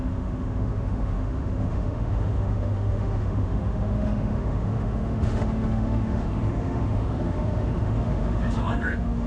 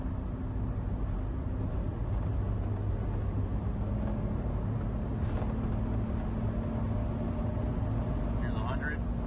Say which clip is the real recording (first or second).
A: second